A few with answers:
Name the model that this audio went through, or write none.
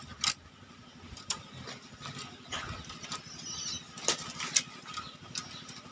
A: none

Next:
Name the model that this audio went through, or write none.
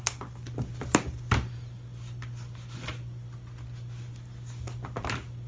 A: none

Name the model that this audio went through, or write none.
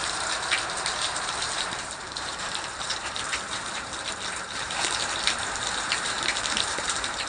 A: vocoder, BigVGAN v2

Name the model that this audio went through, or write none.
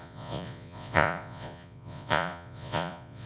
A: vocoder, Vocos